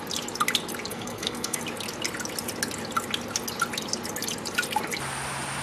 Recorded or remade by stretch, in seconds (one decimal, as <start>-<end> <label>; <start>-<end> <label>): 0.0-0.9 recorded; 0.9-1.6 remade; 1.6-5.6 recorded